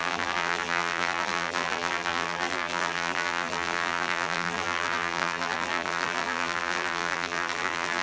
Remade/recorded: remade